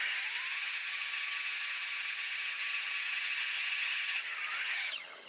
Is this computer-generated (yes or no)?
yes